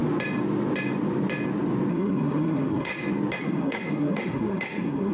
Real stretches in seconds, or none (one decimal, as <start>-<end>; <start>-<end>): 0.0-1.9; 2.9-3.4